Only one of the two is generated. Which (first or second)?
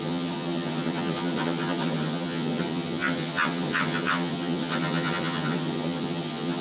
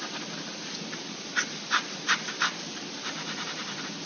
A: first